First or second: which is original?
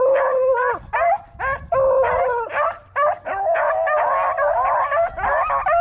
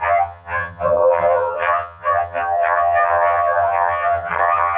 first